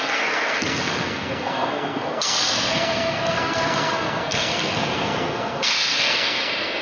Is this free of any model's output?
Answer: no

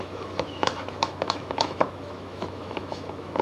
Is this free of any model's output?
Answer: no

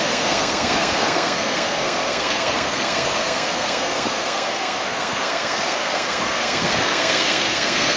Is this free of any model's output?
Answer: no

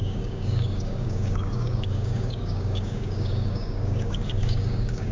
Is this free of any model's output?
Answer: no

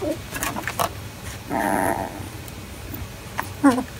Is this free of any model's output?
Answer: yes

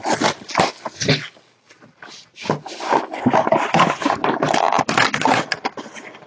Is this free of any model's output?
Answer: yes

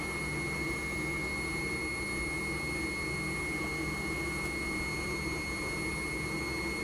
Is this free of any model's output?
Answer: yes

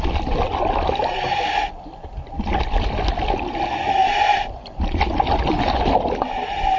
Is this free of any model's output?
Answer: yes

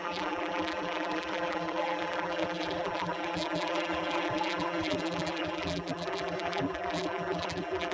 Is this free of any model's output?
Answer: no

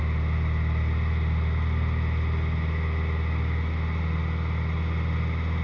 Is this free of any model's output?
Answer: yes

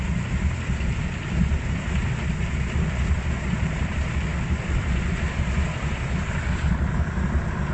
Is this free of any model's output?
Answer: yes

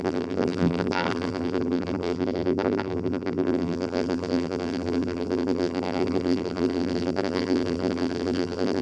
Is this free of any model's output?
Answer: no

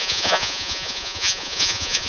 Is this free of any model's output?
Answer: no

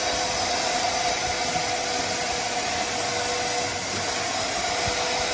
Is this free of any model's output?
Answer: yes